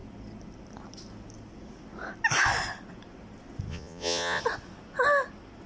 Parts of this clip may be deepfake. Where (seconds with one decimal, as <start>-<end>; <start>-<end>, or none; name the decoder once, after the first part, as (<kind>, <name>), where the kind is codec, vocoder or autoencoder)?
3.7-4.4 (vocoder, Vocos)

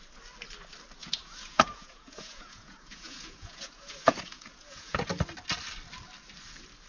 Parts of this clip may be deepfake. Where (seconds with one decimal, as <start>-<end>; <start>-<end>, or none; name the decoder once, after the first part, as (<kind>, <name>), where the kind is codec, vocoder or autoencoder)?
1.0-5.1 (vocoder, Vocos)

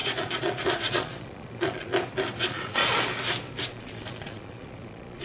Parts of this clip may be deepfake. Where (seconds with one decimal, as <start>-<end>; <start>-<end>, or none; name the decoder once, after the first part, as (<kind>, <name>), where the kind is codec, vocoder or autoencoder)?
0.0-1.9 (vocoder, Vocos); 2.4-2.8; 3.7-5.2

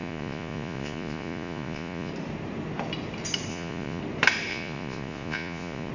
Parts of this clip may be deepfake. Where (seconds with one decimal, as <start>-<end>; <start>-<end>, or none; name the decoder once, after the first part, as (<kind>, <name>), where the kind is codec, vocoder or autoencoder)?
0.0-2.1 (vocoder, Vocos); 3.5-4.0; 4.5-5.9

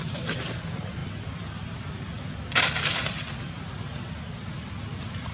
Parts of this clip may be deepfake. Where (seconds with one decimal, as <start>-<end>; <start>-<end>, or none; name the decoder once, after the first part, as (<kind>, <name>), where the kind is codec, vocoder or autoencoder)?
none

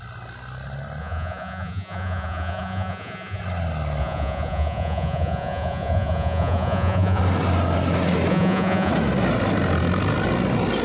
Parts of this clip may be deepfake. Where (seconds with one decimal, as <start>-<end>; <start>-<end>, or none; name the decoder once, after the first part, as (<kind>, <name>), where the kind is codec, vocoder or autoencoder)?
1.0-3.4 (vocoder, Vocos); 4.0-7.2; 8.3-8.9